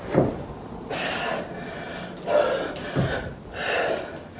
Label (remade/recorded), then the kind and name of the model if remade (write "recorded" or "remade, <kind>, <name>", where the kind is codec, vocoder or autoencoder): recorded